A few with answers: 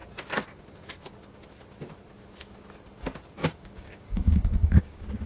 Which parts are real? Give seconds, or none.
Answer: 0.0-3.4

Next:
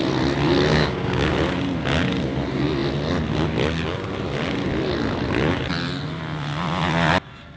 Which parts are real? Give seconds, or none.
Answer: 0.0-0.7; 1.3-7.6